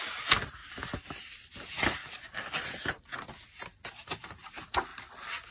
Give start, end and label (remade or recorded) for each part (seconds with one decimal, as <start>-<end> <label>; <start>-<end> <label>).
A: 0.0-5.5 recorded